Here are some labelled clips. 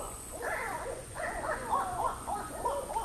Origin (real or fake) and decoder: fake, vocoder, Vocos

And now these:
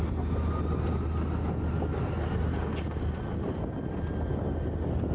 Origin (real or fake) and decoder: real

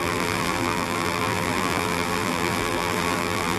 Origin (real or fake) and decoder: fake, vocoder, BigVGAN v2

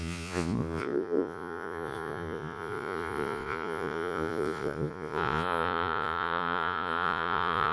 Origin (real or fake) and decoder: fake, vocoder, Vocos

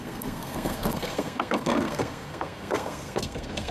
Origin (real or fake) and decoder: fake, codec, SNAC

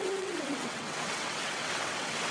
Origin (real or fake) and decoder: fake, vocoder, WaveNeXt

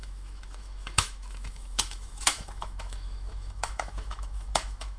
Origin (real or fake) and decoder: fake, autoencoder, DAC-VAE